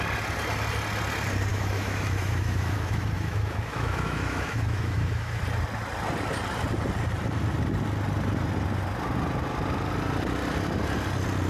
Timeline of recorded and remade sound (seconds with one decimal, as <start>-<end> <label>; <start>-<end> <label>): 0.0-1.5 recorded; 1.5-5.4 remade; 5.4-11.5 recorded